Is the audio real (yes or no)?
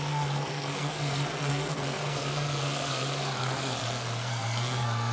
no